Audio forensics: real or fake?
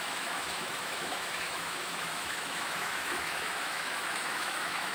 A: fake